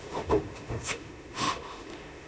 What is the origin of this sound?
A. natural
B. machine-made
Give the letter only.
B